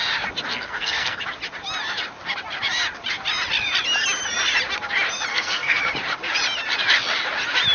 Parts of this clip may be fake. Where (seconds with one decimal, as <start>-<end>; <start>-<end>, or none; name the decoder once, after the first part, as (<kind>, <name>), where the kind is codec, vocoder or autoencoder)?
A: 0.5-1.2 (codec, SNAC); 5.3-5.8